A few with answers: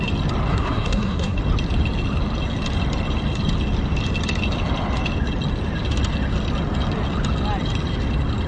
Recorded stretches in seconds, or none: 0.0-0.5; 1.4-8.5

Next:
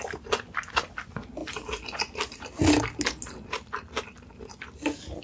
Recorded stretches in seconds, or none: 0.0-5.2

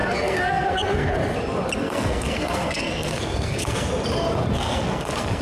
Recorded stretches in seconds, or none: 1.2-1.8; 3.9-4.5

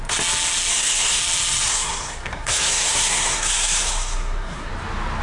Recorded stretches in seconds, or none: 0.0-0.7; 1.2-1.7; 4.7-5.2

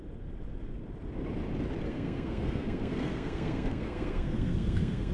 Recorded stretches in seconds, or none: 0.0-1.8

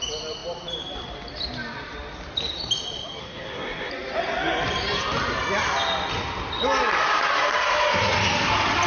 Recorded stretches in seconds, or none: 0.0-3.2; 3.9-8.9

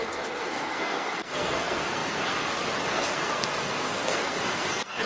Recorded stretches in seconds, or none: none